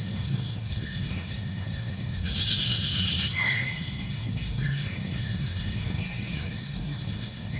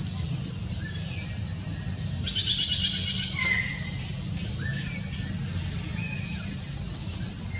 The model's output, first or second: first